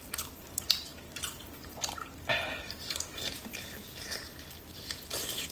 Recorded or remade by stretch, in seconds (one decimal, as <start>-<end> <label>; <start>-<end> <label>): 0.0-5.5 recorded